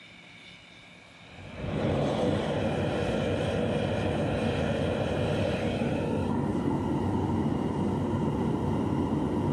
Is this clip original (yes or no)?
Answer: yes